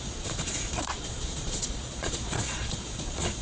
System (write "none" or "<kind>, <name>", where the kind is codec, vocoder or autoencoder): vocoder, Vocos